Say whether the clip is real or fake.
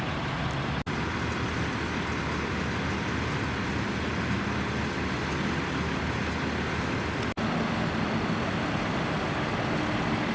real